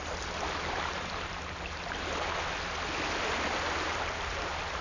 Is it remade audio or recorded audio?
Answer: recorded